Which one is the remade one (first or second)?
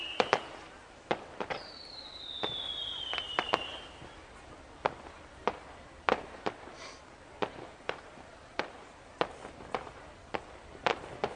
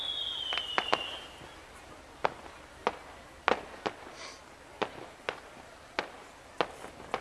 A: first